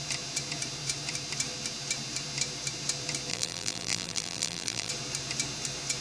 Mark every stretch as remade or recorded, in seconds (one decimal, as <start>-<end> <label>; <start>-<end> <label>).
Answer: 0.0-3.3 recorded; 3.3-4.9 remade; 4.9-6.0 recorded